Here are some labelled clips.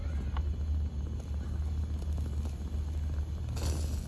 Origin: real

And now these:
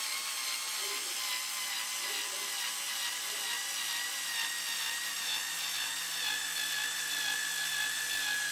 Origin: real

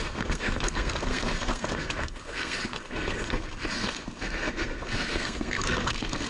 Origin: fake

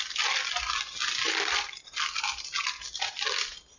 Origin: real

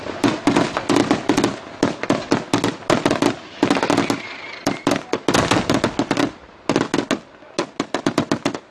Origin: real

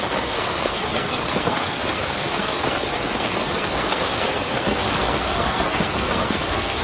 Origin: fake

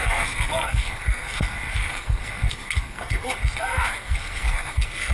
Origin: fake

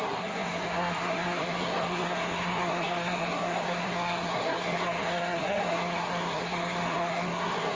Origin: fake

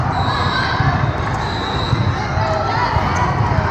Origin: real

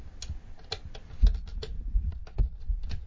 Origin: real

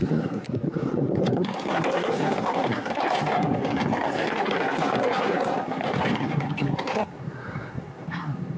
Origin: fake